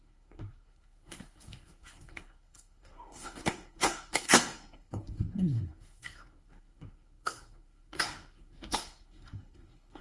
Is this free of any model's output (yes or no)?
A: no